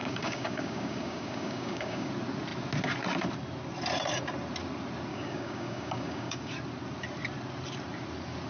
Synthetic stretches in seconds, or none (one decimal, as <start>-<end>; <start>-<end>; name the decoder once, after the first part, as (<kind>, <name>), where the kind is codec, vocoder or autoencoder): 0.0-2.1 (codec, DAC); 5.1-6.5

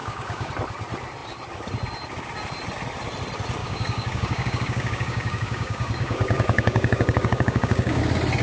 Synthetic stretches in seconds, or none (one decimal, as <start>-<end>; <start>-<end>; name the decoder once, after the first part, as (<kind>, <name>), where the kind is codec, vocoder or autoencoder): 0.0-0.5 (codec, DAC); 3.6-8.0